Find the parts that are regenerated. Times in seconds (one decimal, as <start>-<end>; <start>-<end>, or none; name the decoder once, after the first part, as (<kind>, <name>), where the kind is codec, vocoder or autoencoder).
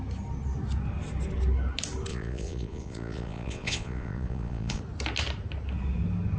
2.1-4.8 (vocoder, Vocos)